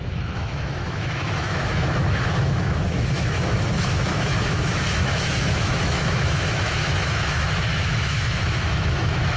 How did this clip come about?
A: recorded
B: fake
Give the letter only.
B